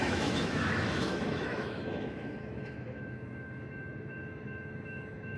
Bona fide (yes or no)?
no